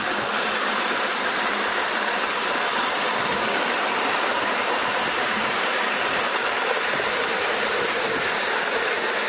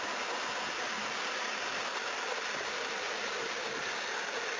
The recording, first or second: second